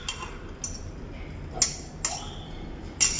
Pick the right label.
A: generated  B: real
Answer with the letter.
B